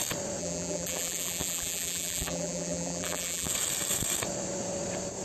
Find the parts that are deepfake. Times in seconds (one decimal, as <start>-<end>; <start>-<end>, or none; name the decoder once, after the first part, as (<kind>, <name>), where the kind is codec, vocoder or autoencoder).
0.4-3.5 (vocoder, BigVGAN v2)